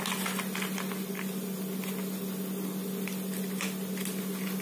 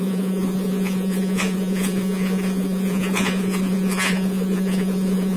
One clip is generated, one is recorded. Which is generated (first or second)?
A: second